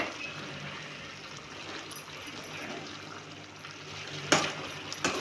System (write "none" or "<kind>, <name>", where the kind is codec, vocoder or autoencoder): none